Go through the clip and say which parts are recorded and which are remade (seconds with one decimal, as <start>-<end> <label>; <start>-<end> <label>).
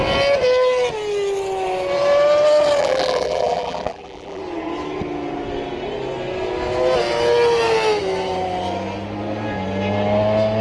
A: 0.0-2.8 recorded; 2.8-4.4 remade; 4.4-10.6 recorded